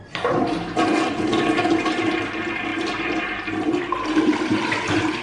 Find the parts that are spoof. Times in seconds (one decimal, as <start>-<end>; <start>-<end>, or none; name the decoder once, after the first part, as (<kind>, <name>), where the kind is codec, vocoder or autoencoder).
0.0-5.2 (vocoder, BigVGAN v2)